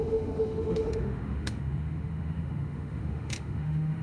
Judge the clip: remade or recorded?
remade